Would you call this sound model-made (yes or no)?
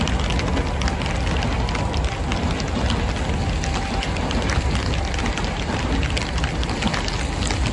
no